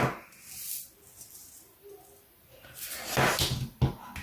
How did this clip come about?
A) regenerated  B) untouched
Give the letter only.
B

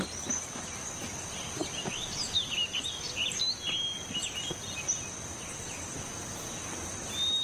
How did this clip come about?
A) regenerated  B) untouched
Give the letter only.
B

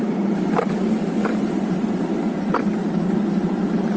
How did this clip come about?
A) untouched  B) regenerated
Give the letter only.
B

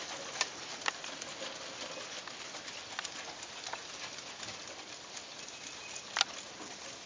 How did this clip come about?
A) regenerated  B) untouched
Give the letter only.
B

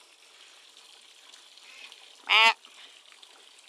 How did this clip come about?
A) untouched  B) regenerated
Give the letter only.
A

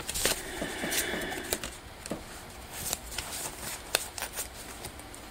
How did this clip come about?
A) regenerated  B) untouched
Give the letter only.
A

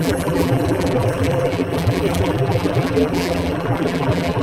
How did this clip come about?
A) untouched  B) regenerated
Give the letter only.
B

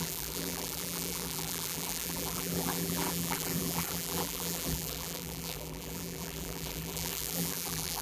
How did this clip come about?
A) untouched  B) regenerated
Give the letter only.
B